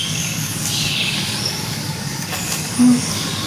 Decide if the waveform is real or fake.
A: fake